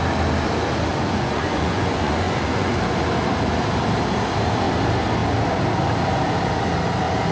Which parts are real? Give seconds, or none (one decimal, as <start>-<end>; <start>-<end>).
0.0-0.9; 2.7-7.3

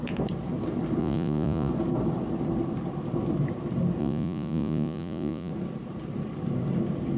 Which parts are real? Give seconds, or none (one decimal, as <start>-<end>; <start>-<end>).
0.0-1.0; 1.7-4.0; 5.5-7.2